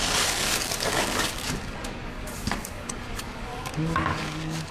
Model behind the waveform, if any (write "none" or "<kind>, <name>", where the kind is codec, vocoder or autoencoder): codec, DAC